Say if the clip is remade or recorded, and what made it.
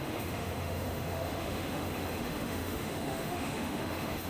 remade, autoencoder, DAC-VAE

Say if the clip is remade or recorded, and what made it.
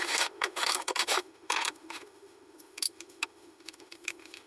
remade, autoencoder, DAC-VAE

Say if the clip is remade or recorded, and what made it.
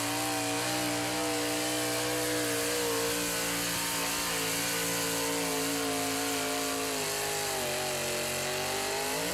recorded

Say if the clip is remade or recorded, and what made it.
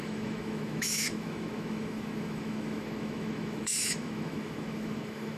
remade, autoencoder, DAC-VAE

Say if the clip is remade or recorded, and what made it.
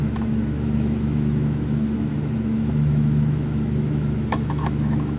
remade, autoencoder, DAC-VAE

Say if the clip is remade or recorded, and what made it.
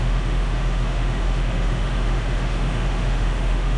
remade, autoencoder, DAC-VAE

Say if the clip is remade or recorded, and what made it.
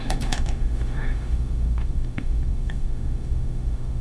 remade, autoencoder, DAC-VAE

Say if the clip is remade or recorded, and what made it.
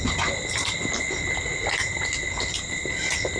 recorded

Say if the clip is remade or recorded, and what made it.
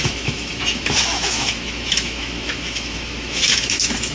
remade, autoencoder, DAC-VAE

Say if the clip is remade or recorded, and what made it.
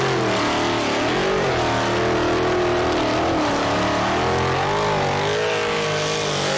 recorded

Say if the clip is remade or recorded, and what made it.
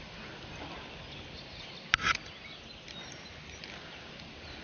recorded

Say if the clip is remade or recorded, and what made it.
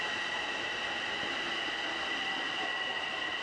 recorded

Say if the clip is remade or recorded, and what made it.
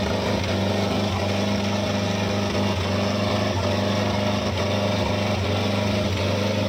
recorded